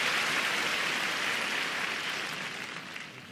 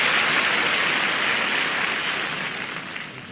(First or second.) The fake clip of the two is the first